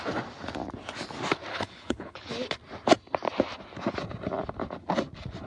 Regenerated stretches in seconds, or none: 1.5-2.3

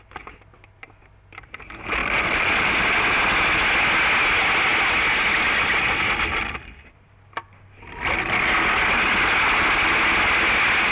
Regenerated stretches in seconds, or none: 2.0-2.7

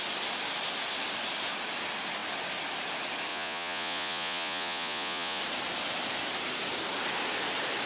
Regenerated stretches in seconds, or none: 3.3-5.4